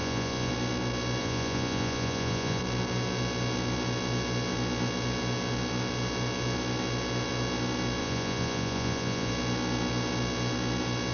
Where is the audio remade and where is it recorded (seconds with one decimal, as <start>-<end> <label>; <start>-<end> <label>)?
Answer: 0.0-0.5 remade; 0.5-1.2 recorded; 1.2-2.6 remade; 2.6-8.0 recorded; 8.0-9.3 remade; 9.3-11.1 recorded